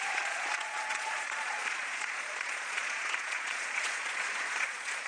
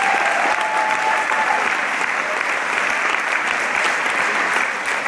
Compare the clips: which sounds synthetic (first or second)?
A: first